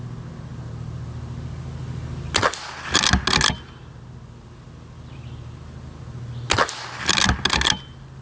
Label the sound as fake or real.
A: real